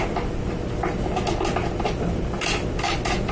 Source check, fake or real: real